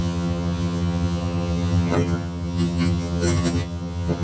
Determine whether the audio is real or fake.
fake